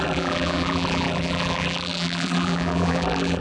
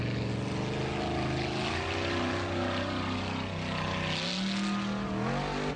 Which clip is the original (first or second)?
second